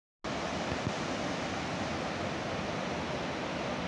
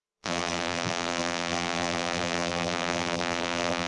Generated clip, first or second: second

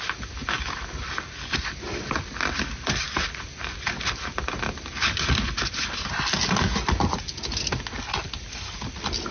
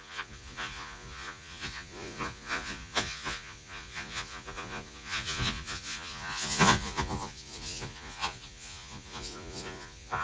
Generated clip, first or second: second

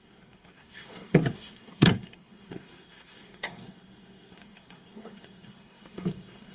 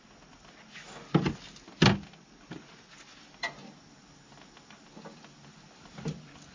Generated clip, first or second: first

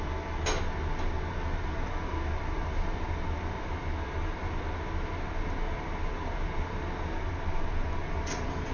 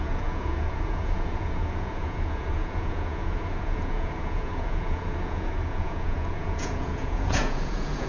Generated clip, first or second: second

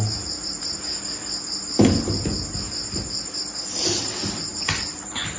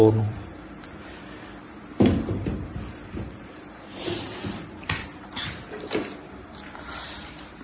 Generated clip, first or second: second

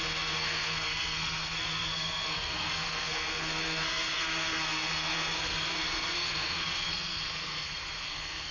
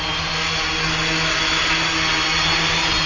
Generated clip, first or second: first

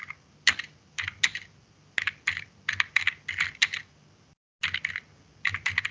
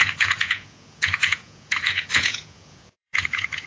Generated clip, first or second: second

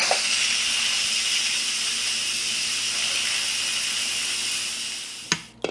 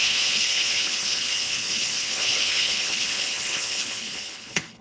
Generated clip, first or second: second